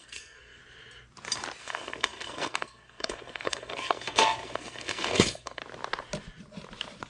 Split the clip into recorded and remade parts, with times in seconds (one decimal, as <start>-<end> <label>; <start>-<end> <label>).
0.0-0.6 remade; 0.6-1.6 recorded; 1.6-5.6 remade; 5.6-7.1 recorded